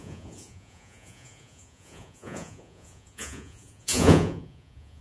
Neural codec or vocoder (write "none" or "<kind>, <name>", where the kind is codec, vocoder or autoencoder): vocoder, Vocos